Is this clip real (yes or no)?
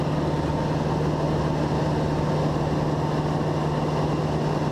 yes